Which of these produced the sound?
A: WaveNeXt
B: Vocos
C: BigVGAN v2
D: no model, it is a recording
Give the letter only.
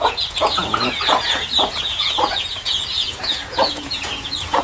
B